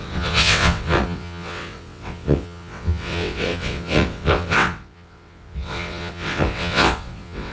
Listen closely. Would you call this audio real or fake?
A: fake